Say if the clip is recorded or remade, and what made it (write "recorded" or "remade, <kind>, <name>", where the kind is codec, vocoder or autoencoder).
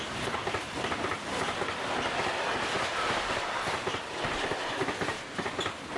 recorded